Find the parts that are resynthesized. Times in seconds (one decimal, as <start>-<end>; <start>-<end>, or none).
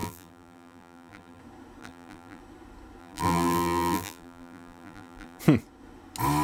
0.0-1.4; 1.8-2.4; 3.0-5.4